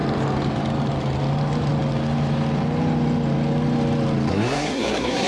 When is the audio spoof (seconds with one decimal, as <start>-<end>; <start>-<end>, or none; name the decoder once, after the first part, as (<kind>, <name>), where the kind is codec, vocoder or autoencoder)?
4.3-5.3 (codec, SNAC)